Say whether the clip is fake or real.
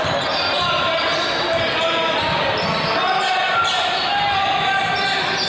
real